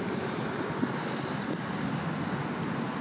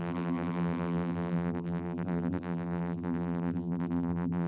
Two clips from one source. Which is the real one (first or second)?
first